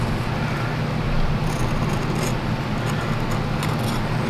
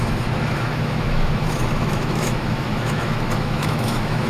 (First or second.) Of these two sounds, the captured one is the first